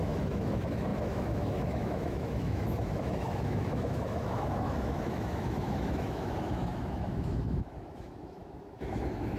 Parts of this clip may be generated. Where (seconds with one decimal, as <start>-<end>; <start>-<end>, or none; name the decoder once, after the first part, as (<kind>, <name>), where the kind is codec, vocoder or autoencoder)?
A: 0.0-9.4 (autoencoder, DAC-VAE)

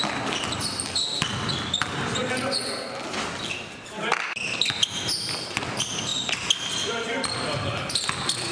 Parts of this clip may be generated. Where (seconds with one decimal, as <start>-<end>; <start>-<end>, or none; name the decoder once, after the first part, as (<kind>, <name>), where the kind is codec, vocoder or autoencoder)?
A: none

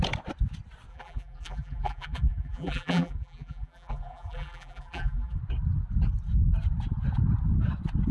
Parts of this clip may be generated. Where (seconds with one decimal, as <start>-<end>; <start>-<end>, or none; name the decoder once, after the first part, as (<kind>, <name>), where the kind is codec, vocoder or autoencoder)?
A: 0.9-5.4 (vocoder, BigVGAN v2)

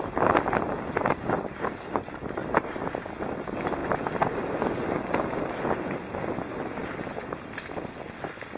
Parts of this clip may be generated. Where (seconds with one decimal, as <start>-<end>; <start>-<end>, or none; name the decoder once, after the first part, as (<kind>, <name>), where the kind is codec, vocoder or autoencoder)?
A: none